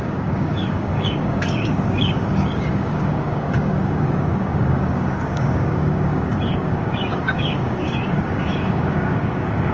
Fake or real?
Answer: fake